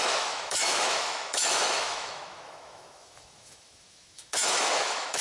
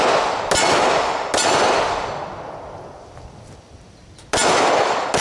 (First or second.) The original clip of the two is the second